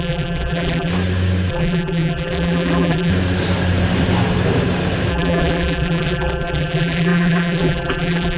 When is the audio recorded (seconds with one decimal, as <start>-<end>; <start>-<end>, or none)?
0.9-1.5; 3.1-5.1

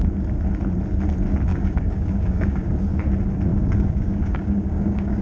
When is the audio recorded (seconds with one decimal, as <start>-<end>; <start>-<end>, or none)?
0.0-1.5; 2.7-3.5

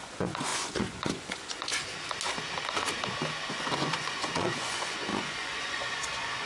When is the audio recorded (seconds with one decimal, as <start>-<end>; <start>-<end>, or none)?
1.7-3.5

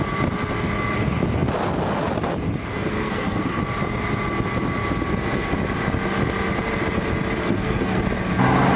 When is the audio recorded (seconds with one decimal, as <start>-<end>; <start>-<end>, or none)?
0.0-2.7; 3.6-7.4; 8.0-8.8

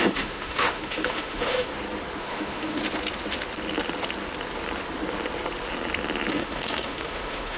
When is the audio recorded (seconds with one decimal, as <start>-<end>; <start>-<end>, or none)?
1.7-2.2; 2.8-6.3

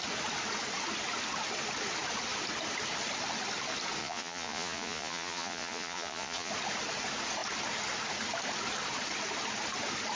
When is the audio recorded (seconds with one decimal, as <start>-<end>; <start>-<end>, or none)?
0.0-4.0; 6.5-10.2